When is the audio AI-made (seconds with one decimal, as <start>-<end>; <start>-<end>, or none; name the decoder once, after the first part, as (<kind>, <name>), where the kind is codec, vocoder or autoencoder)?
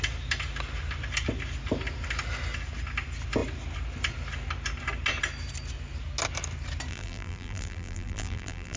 6.9-8.8 (vocoder, BigVGAN v2)